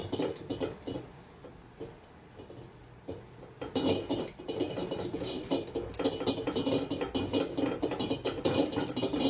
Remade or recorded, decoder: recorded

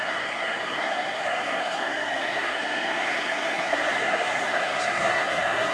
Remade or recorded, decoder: remade, codec, SNAC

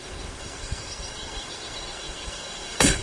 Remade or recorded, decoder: remade, codec, SNAC